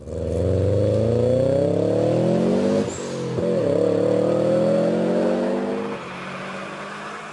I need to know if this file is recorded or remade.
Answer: recorded